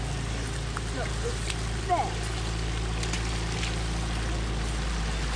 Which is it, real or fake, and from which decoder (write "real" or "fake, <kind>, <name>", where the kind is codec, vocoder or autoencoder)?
real